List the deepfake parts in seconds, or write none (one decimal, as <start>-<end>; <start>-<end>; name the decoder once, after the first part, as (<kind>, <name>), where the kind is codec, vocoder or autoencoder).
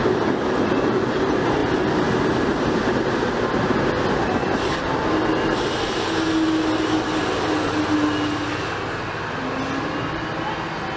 none